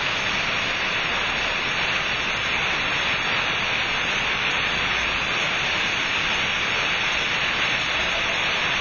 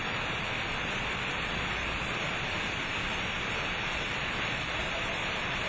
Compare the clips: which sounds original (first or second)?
first